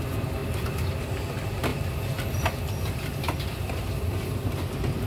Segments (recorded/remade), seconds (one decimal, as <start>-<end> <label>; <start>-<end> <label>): 0.0-5.1 recorded